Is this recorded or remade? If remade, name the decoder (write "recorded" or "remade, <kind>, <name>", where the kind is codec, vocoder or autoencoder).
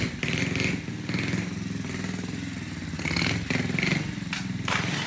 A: recorded